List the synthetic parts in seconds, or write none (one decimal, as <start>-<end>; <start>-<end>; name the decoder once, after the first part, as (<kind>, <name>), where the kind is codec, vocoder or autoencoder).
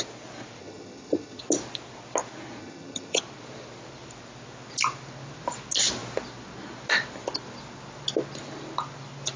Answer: 0.6-1.4 (vocoder, HiFi-GAN); 2.6-3.2